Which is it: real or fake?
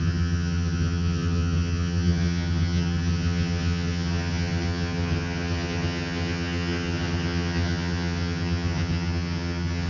fake